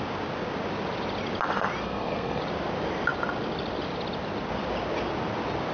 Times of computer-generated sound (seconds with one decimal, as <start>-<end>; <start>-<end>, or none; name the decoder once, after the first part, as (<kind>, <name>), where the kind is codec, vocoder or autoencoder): 1.8-2.4 (codec, SNAC)